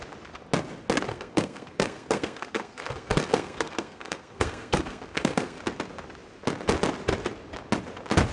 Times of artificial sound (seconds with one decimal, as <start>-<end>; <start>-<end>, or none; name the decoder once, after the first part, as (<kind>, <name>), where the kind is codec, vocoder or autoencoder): 1.1-5.6 (codec, SNAC)